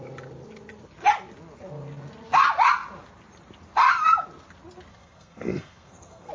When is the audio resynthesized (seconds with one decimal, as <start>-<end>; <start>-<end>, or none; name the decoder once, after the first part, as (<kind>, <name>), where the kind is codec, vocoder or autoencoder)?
4.9-6.3 (codec, SNAC)